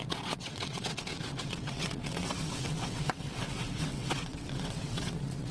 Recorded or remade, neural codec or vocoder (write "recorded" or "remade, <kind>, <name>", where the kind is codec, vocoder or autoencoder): remade, vocoder, WaveNeXt